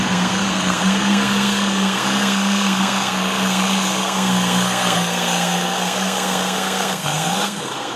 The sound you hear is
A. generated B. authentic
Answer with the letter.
A